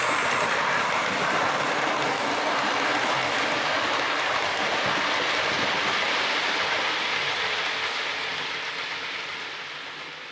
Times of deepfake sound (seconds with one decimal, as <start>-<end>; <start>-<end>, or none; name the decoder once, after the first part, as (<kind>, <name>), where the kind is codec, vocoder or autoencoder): none